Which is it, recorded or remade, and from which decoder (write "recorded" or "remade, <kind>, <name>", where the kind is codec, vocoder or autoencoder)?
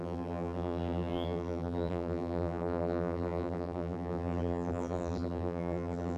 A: remade, vocoder, BigVGAN v2